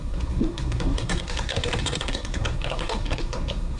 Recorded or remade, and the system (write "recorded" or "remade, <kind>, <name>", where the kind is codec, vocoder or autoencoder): remade, codec, SNAC